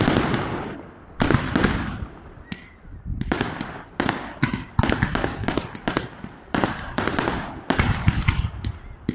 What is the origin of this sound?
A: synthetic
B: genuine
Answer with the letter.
A